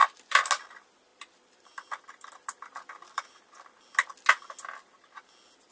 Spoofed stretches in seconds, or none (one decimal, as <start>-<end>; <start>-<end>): 0.0-0.5; 1.1-3.7